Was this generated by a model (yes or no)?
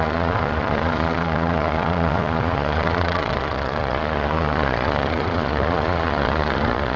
yes